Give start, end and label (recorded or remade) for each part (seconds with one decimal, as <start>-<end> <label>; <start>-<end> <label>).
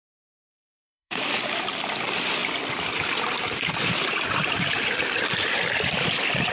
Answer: 0.0-0.5 recorded; 0.5-1.3 remade; 1.3-6.5 recorded